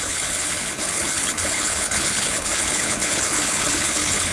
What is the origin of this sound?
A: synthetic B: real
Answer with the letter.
A